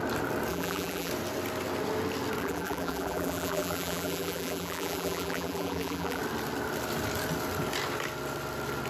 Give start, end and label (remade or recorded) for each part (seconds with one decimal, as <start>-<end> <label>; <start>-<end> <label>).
0.0-0.5 recorded; 0.5-1.1 remade; 1.1-2.4 recorded; 2.4-6.2 remade; 6.2-8.9 recorded